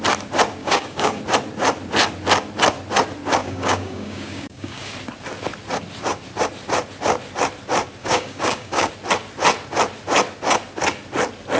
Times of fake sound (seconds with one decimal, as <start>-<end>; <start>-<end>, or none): 0.6-1.2; 3.4-4.9; 8.0-8.9